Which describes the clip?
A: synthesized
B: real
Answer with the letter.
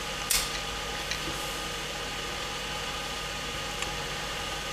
B